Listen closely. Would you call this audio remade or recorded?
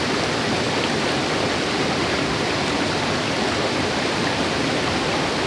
recorded